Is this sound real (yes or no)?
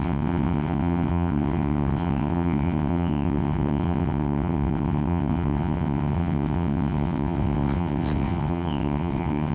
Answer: no